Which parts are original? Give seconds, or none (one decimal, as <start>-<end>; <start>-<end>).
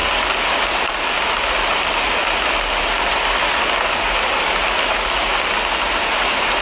0.0-6.6